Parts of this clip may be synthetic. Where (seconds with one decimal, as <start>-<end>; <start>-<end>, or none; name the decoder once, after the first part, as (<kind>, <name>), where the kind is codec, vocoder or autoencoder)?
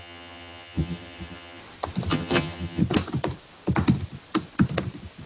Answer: 0.0-1.6 (vocoder, HiFi-GAN); 2.1-2.8